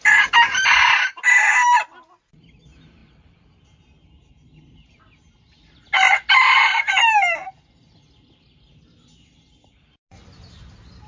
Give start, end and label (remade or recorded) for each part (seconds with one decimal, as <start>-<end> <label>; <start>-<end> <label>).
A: 0.0-11.1 recorded